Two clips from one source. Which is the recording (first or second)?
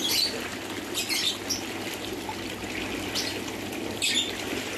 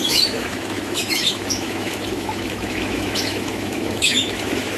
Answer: first